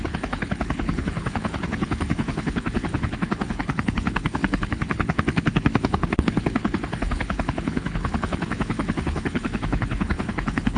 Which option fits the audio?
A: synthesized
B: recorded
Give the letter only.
A